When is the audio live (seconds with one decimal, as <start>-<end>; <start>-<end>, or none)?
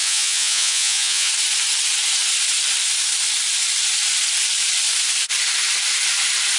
1.3-6.6